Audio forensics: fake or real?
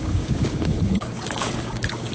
fake